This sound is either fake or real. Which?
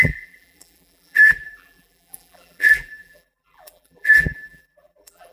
fake